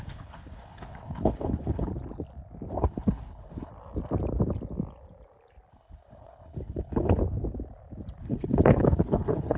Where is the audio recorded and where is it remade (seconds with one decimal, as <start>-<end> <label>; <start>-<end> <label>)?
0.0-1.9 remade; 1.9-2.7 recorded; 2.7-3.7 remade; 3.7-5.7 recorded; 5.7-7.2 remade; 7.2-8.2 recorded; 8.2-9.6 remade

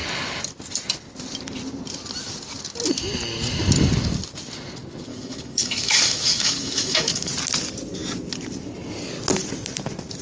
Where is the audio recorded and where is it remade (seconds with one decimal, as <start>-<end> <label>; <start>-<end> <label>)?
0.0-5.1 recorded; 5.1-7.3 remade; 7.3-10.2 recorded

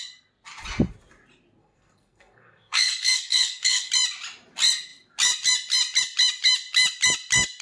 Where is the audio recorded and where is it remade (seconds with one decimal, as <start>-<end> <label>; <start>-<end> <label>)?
0.0-1.6 recorded; 1.6-3.9 remade; 3.9-7.6 recorded

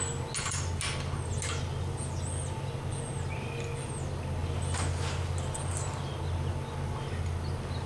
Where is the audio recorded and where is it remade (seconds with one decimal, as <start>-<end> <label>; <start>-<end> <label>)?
0.0-7.9 recorded

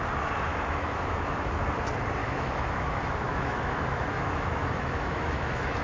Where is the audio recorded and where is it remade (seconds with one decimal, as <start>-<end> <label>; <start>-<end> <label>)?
0.0-0.5 recorded; 0.5-1.7 remade; 1.7-2.2 recorded; 2.2-5.8 remade

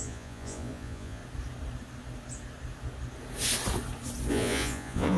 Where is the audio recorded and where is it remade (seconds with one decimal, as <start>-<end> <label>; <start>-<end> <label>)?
0.0-1.2 remade; 1.2-4.3 recorded; 4.3-5.2 remade

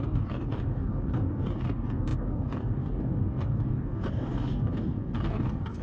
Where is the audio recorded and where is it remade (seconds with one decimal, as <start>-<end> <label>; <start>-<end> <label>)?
0.0-5.8 remade